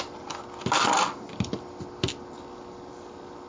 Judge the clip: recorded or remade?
recorded